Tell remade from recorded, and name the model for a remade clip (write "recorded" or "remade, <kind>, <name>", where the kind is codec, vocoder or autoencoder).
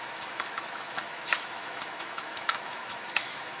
remade, autoencoder, DAC-VAE